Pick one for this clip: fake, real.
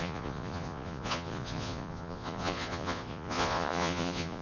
fake